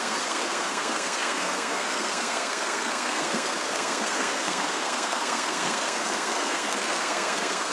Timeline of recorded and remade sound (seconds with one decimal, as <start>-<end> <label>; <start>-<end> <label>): 0.0-7.7 remade